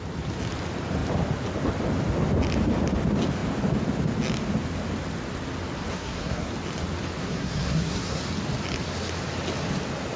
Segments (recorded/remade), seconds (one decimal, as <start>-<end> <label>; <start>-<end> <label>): 0.0-5.9 recorded; 5.9-6.5 remade; 6.5-7.2 recorded; 7.2-8.2 remade; 8.2-10.2 recorded